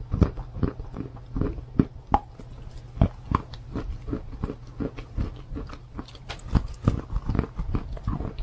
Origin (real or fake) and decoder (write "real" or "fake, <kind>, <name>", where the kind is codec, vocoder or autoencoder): real